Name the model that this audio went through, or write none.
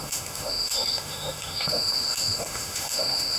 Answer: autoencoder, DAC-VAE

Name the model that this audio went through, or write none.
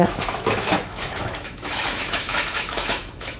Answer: autoencoder, DAC-VAE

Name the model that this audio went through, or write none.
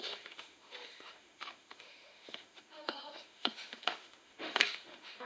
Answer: autoencoder, DAC-VAE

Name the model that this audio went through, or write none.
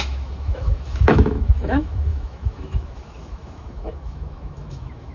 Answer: autoencoder, DAC-VAE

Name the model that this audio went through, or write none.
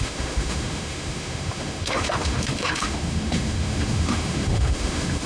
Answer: autoencoder, DAC-VAE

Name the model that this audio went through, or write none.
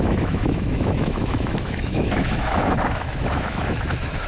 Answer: autoencoder, DAC-VAE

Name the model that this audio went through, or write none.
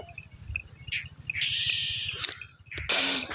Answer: none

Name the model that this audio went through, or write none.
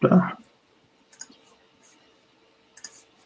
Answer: none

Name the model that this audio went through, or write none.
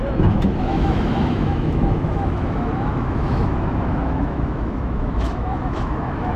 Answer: autoencoder, DAC-VAE